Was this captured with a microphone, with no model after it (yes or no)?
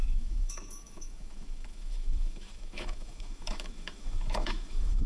no